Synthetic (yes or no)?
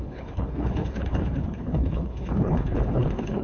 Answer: yes